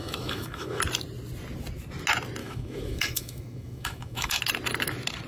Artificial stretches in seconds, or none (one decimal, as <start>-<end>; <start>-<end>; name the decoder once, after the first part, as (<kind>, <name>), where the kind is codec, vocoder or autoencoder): 0.0-0.8 (autoencoder, DAC-VAE); 2.4-4.4